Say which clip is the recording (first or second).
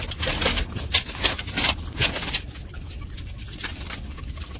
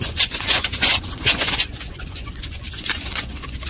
first